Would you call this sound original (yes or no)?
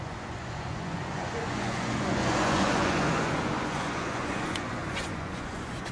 no